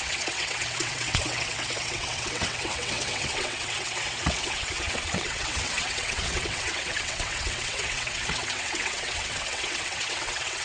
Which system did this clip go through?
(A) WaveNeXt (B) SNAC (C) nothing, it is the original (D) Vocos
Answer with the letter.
A